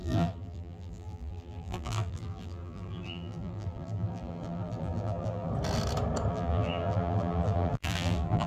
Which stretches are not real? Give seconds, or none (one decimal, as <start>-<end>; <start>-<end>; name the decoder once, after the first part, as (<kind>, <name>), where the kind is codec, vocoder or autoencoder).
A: 0.0-5.5 (vocoder, BigVGAN v2); 6.3-8.5